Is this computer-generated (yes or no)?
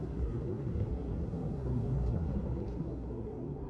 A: yes